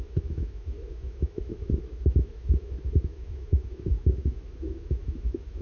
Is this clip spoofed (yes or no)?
yes